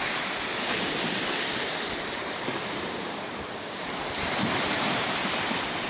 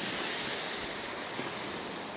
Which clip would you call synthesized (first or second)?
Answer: first